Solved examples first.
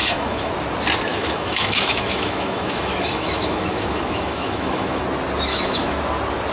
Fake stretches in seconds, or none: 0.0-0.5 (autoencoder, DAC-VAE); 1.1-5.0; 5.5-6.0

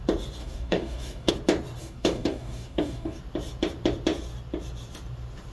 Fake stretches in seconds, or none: 0.4-1.3 (codec, DAC); 1.8-3.2